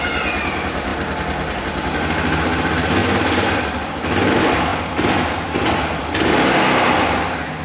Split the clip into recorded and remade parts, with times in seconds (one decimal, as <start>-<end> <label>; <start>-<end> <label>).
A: 0.0-7.6 recorded